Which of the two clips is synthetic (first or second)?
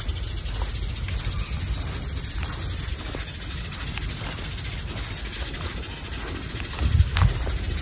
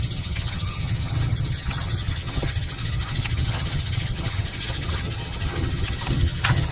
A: second